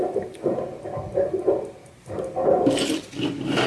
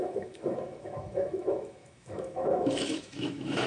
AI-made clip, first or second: second